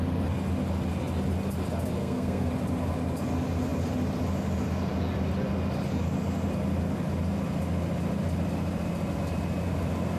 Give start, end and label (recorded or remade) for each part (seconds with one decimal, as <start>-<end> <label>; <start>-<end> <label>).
0.0-2.0 recorded; 2.0-2.5 remade; 2.5-10.2 recorded